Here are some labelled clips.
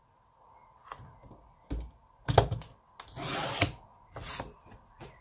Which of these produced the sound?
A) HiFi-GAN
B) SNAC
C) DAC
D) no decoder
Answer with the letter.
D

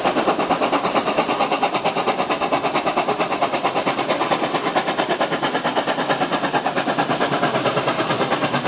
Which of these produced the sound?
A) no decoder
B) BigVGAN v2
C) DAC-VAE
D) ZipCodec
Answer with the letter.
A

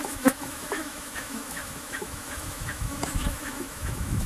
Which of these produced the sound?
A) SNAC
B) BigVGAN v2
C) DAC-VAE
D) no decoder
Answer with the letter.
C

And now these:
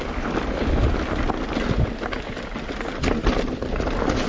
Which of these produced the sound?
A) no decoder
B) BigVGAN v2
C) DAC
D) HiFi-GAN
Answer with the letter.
A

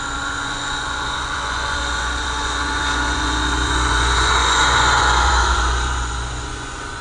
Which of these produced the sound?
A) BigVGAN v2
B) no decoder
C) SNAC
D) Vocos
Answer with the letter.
D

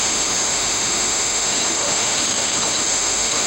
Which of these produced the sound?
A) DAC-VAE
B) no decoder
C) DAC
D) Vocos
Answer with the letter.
A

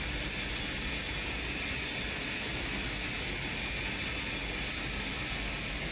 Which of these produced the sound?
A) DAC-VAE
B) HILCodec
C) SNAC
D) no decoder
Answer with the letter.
D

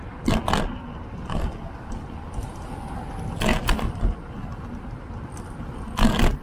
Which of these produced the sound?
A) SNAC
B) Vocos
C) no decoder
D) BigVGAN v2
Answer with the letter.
C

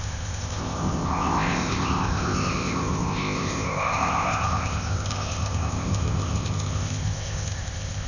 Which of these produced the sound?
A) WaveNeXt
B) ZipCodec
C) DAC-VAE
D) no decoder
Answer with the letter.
B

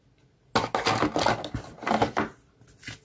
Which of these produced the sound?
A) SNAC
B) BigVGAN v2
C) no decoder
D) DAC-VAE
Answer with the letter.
C